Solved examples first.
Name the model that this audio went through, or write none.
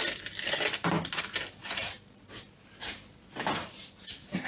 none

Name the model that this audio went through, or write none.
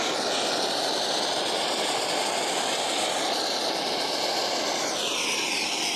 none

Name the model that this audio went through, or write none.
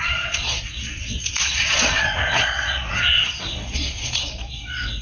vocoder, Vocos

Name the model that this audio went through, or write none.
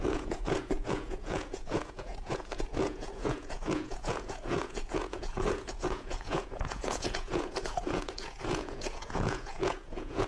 vocoder, Vocos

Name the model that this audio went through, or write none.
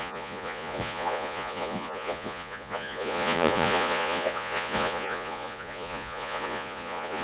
vocoder, Vocos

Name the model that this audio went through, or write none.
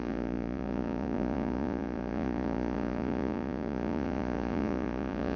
vocoder, Vocos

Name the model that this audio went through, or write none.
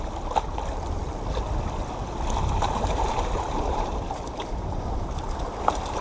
none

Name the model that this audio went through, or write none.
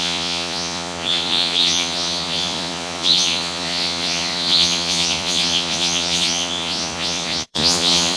vocoder, Vocos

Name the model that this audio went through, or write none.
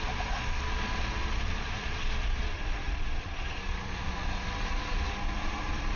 vocoder, Vocos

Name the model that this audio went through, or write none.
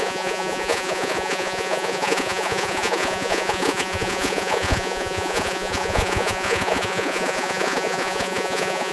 vocoder, Vocos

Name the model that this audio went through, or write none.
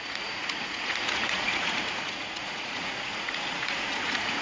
vocoder, Vocos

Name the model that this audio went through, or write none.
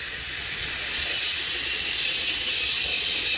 vocoder, Vocos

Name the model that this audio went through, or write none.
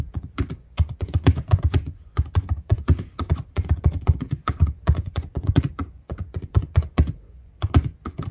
vocoder, Vocos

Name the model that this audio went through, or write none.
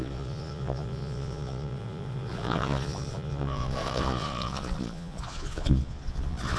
vocoder, Vocos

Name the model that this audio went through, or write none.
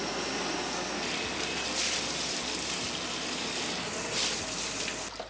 none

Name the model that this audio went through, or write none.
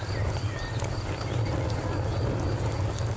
none